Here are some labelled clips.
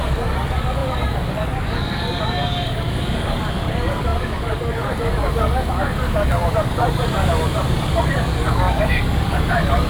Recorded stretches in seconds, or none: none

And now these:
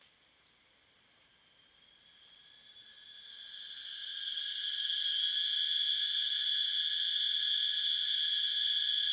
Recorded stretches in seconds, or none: 0.0-9.1

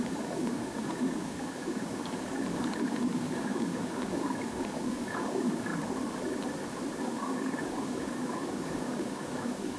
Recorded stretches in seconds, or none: 5.7-7.0

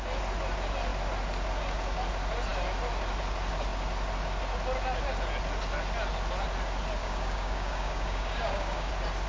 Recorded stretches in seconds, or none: 0.0-7.0; 8.9-9.3

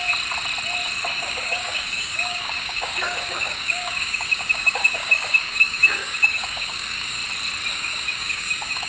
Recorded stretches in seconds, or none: 0.0-1.2; 7.2-7.7